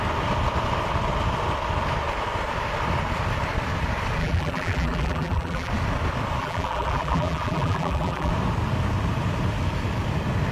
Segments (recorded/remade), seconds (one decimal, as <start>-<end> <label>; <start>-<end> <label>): 0.0-4.2 recorded; 4.2-5.7 remade; 5.7-6.4 recorded; 6.4-8.3 remade; 8.3-10.5 recorded